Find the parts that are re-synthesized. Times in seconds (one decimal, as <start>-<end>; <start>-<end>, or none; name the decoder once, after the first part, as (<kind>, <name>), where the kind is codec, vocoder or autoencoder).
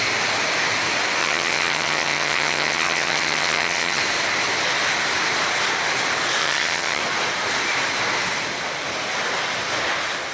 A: 1.2-4.0 (vocoder, HiFi-GAN); 6.4-7.0